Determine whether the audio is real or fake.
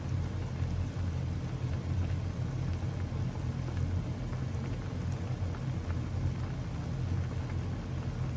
real